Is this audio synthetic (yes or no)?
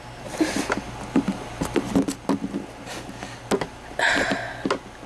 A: no